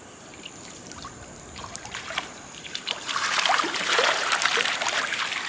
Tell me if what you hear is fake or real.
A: fake